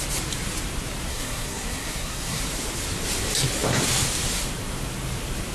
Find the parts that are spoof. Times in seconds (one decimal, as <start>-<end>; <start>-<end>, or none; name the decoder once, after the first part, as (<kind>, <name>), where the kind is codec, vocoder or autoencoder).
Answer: 1.1-2.4 (codec, SNAC)